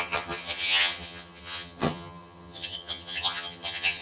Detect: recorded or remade remade